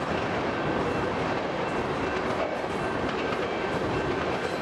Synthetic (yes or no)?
no